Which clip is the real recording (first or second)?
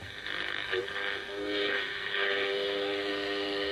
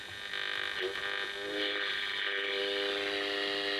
second